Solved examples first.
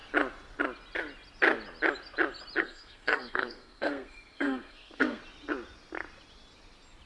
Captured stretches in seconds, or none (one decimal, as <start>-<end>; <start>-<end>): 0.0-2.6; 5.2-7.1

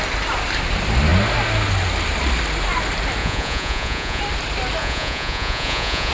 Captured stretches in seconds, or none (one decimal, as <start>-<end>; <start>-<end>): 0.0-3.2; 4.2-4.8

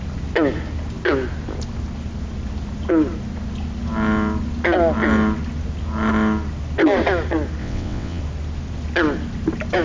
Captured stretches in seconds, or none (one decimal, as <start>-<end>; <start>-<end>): 0.0-7.6; 8.2-9.8

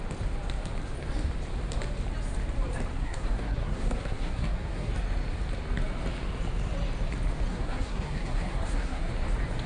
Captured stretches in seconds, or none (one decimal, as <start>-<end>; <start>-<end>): 0.0-2.9; 4.9-7.5; 9.1-9.7

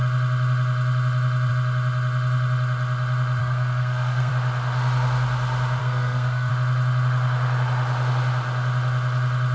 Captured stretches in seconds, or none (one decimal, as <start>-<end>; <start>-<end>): 0.0-3.4; 4.3-5.8; 6.5-9.5

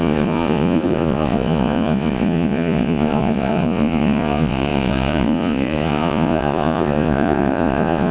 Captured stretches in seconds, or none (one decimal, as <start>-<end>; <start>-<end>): none